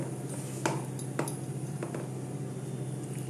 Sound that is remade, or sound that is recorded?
recorded